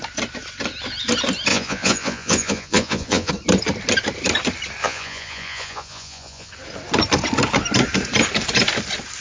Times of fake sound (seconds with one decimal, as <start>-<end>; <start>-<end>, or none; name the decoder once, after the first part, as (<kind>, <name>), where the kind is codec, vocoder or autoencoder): 1.5-3.3 (vocoder, Vocos); 4.8-6.5